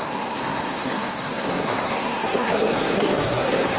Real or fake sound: fake